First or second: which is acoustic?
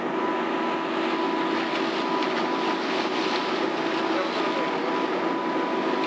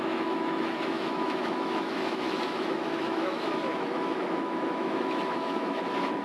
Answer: first